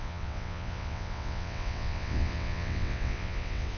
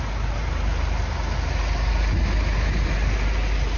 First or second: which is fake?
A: first